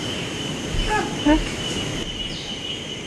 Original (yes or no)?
no